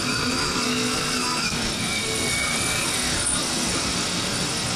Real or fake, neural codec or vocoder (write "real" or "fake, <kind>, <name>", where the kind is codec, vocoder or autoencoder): fake, codec, SNAC